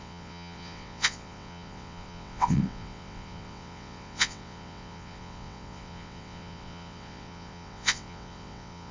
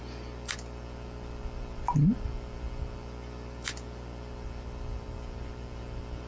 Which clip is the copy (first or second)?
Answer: first